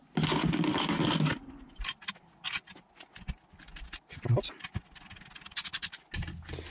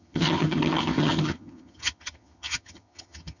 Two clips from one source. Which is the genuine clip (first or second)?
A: first